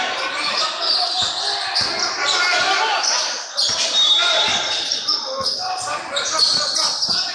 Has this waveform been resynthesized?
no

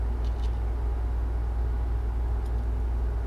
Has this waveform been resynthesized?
no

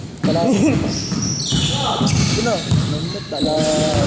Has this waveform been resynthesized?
no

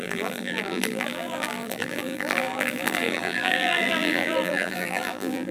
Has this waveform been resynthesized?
yes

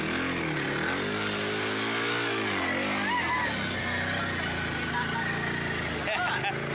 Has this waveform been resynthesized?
no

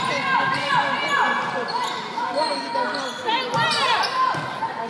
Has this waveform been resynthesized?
no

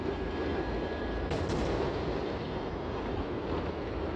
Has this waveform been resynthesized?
no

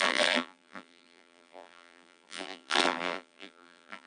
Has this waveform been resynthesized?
yes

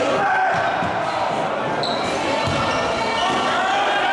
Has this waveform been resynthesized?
no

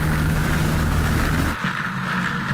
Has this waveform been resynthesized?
no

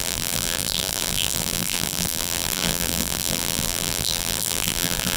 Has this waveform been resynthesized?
yes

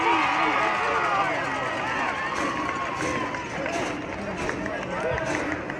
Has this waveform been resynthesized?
no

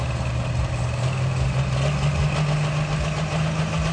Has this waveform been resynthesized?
no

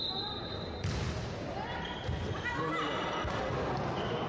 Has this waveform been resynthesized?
no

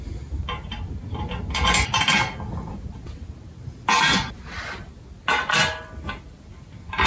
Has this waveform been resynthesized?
no